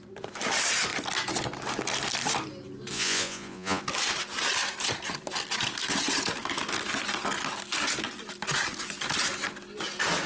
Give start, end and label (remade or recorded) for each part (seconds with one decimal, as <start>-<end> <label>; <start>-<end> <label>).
0.0-2.9 recorded; 2.9-3.8 remade; 3.8-10.3 recorded